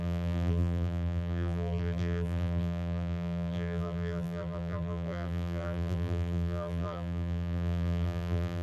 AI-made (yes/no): yes